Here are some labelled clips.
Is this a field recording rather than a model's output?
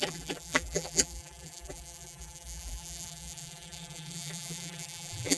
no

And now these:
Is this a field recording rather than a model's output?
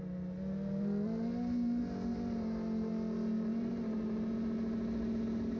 yes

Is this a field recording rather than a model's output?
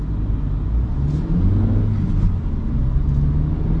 yes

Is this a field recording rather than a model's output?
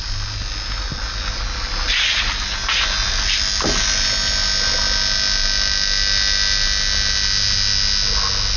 yes